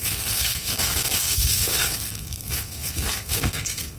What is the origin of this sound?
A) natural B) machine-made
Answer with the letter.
B